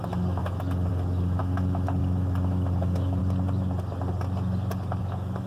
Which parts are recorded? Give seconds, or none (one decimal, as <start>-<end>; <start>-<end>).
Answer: 3.2-5.0